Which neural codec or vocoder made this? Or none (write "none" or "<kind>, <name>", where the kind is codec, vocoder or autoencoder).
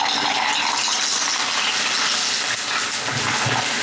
none